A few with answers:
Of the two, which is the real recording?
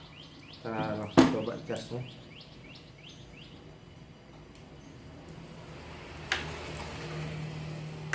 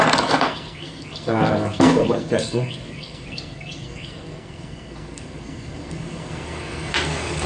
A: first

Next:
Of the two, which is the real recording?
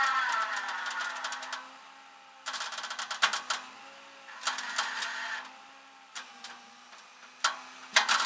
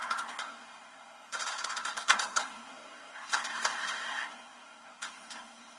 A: first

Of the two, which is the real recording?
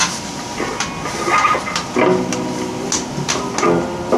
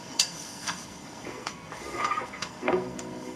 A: first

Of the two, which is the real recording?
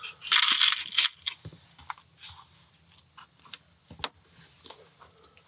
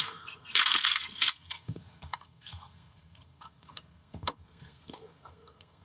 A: first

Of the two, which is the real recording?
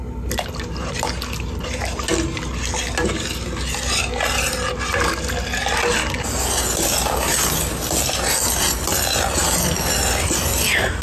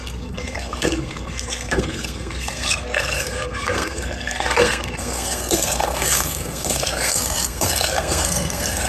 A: first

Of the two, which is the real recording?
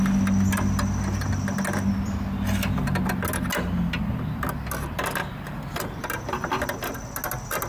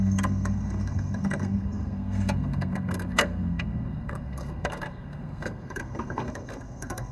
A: first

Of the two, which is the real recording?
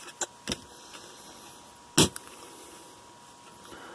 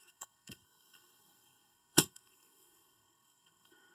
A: first